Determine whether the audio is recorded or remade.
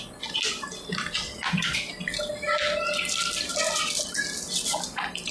recorded